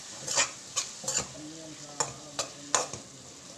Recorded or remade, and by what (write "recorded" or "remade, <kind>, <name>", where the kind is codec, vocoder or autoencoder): recorded